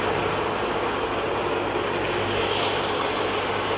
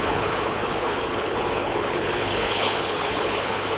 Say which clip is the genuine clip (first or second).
first